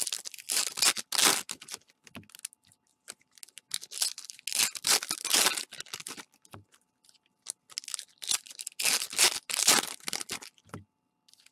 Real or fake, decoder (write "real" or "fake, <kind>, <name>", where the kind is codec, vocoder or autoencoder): real